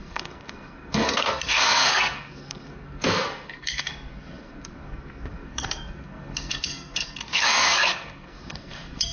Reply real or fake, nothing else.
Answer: fake